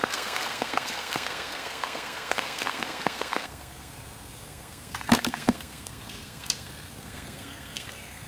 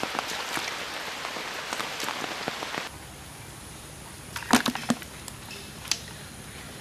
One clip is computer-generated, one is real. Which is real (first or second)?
second